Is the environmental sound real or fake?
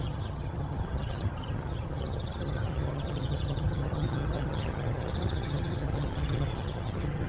fake